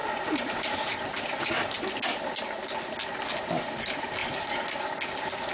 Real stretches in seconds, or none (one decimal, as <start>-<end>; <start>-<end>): 1.9-4.2; 4.7-5.5